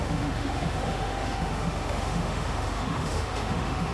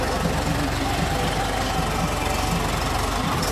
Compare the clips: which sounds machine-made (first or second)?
first